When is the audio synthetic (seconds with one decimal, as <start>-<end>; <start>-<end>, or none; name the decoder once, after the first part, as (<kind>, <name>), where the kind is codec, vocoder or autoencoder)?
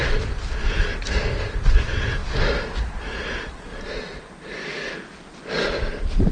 none